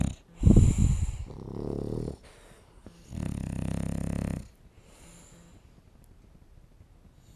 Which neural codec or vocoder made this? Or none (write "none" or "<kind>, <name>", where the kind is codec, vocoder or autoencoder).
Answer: none